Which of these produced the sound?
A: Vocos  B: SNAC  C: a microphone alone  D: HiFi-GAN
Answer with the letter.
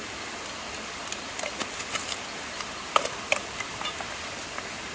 C